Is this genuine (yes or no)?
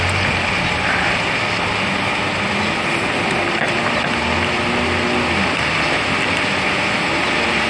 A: yes